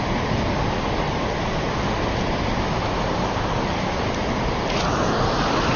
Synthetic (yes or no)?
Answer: no